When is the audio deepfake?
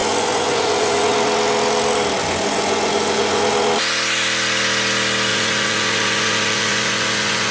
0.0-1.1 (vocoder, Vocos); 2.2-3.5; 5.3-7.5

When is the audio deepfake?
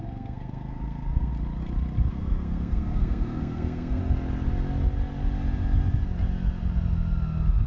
0.0-1.3 (codec, SNAC); 2.1-4.0